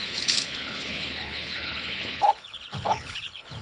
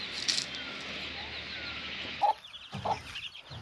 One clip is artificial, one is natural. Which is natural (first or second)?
second